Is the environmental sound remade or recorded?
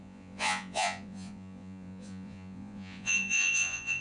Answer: remade